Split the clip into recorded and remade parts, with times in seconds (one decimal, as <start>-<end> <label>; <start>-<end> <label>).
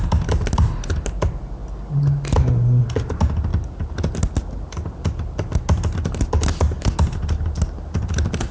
0.0-8.5 recorded